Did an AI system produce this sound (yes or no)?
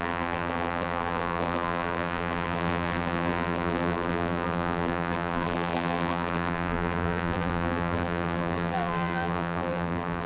yes